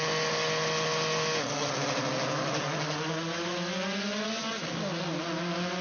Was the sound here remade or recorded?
recorded